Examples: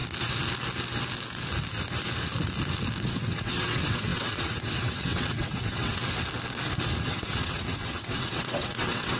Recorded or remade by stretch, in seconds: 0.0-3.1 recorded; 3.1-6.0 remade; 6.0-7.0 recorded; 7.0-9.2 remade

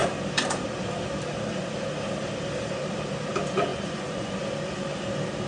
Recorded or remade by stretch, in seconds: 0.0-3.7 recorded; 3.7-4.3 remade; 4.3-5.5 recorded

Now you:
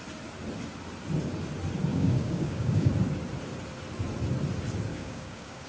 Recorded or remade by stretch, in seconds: 0.0-1.9 recorded; 1.9-2.9 remade; 2.9-4.9 recorded; 4.9-5.7 remade

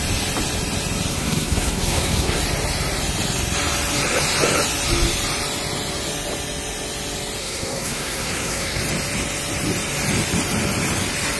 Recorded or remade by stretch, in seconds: 0.0-1.1 recorded; 1.1-2.4 remade; 2.4-7.4 recorded; 7.4-8.8 remade; 8.8-11.4 recorded